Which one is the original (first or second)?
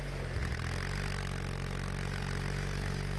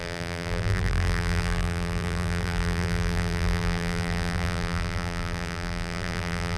first